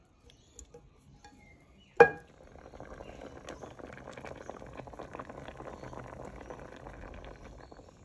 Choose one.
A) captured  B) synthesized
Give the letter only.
A